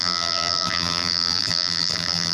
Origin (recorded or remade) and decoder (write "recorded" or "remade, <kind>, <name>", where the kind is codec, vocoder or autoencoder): remade, vocoder, BigVGAN v2